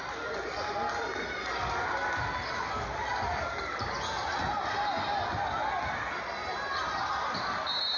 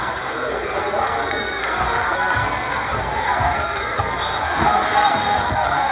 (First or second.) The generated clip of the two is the second